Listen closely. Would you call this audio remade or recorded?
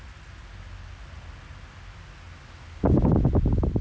recorded